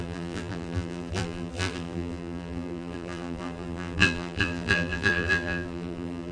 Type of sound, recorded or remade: remade